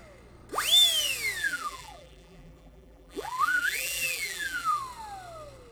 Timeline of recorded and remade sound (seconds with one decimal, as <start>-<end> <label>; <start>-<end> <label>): 0.0-1.4 recorded; 1.4-4.8 remade; 4.8-5.7 recorded